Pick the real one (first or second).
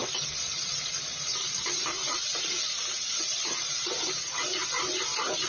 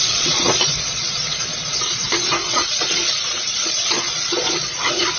first